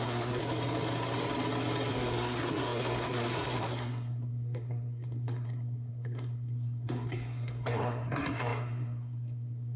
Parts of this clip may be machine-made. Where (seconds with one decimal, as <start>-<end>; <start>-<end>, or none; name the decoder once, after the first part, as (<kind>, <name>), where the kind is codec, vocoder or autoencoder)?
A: 0.0-0.4 (codec, SNAC); 1.9-9.8